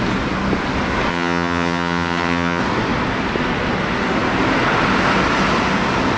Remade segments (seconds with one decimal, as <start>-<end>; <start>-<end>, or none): 1.1-2.6

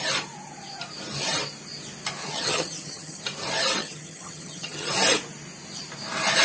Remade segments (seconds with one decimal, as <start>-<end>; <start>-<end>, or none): 2.2-3.2; 3.8-4.9